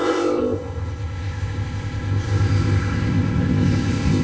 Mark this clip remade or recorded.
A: remade